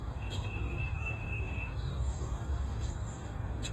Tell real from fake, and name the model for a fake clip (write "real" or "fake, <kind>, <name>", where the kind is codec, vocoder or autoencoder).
fake, codec, DAC